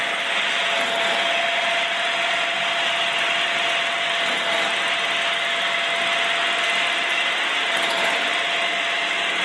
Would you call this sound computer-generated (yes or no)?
no